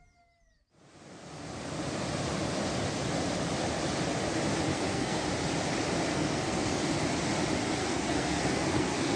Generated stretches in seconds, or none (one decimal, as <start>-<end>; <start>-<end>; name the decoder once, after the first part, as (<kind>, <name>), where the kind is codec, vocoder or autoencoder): 4.7-5.2 (codec, SNAC); 6.1-6.8; 7.8-9.2